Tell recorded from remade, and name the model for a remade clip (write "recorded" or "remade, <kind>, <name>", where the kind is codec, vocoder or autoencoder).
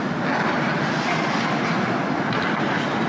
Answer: recorded